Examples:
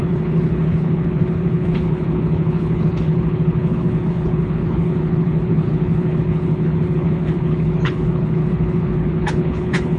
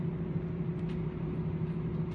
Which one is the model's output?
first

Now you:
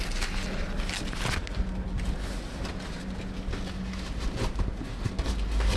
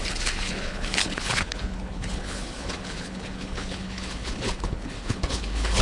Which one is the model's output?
second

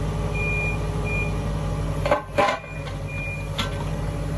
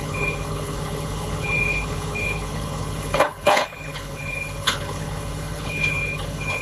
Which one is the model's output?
second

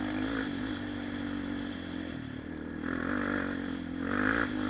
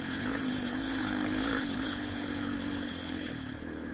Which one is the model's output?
second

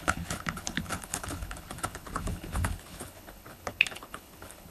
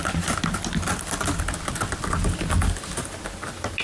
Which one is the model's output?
first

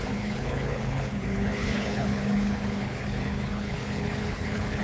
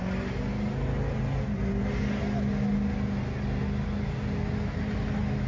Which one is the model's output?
first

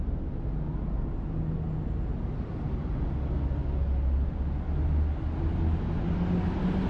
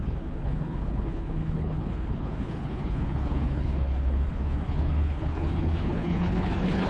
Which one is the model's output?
second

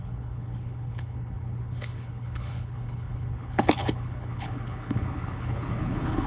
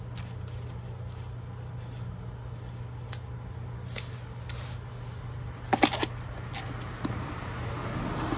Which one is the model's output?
first